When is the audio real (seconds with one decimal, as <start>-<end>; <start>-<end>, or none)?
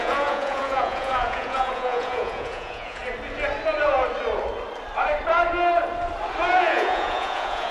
3.0-6.6